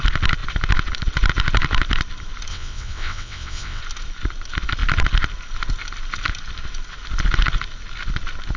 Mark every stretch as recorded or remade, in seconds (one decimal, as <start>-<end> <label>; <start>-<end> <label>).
0.0-2.5 recorded; 2.5-3.8 remade; 3.8-8.6 recorded